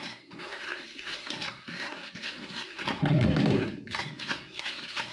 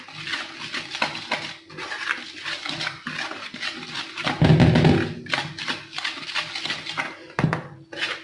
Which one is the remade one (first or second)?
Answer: first